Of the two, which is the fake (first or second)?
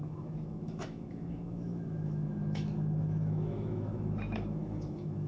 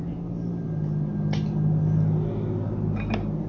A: first